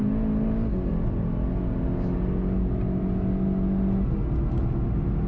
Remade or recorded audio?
recorded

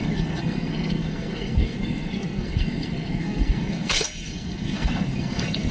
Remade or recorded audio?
remade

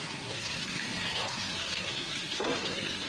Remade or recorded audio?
remade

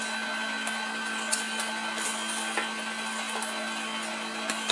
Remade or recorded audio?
recorded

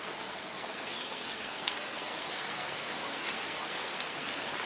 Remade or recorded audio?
remade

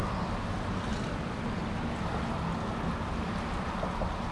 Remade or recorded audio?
recorded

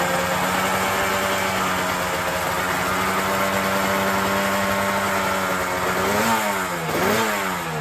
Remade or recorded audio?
recorded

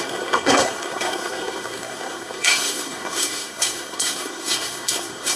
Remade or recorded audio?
remade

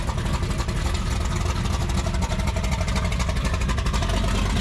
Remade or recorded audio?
recorded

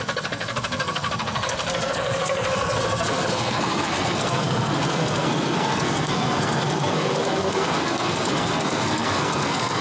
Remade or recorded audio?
remade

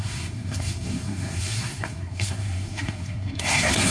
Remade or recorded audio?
remade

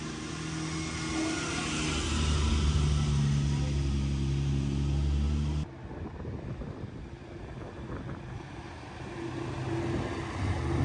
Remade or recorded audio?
recorded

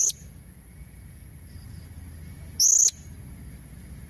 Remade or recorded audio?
recorded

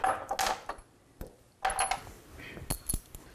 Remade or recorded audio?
recorded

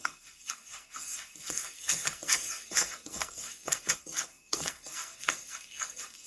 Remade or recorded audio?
remade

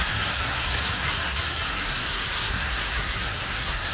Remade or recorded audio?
remade